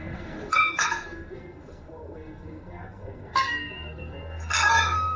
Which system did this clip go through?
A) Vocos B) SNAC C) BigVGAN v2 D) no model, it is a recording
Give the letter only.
B